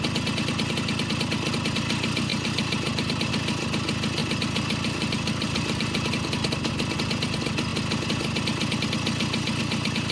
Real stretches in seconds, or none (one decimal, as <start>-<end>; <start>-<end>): 0.0-2.3; 3.3-4.2; 6.7-10.1